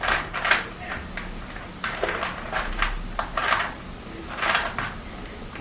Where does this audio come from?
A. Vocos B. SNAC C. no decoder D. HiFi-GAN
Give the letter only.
C